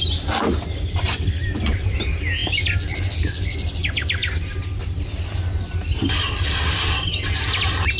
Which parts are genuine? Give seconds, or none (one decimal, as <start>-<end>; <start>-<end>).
0.0-8.0